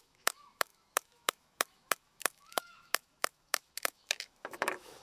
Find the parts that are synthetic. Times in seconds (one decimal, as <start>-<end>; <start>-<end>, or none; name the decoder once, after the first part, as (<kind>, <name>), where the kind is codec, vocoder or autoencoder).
0.0-5.0 (autoencoder, DAC-VAE)